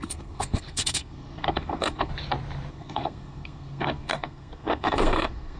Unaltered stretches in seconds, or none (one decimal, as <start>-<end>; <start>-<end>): 2.1-2.7

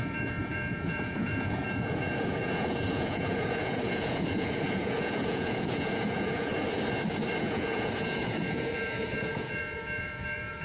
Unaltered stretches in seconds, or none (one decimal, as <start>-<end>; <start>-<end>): 6.5-7.4

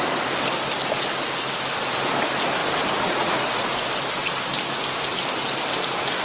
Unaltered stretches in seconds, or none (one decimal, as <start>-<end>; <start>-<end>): 0.0-2.6; 3.9-6.2

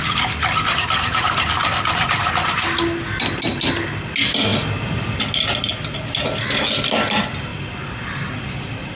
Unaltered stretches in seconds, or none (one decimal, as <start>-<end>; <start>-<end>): 0.0-9.0

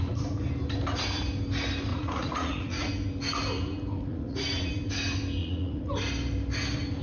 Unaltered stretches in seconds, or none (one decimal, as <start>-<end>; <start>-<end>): 0.0-1.9; 2.9-4.1; 4.7-5.4; 5.9-7.0

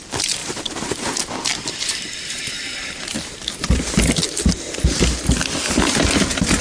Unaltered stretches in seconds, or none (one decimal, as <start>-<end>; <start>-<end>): 0.0-0.4; 4.1-6.6

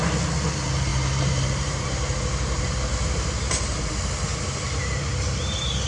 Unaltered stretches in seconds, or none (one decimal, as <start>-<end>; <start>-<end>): 0.0-0.9; 3.9-4.3

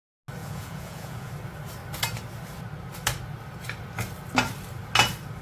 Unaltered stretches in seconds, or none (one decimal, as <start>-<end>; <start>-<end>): 0.0-0.4; 1.3-5.4